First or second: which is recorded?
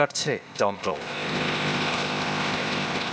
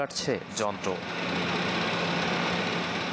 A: second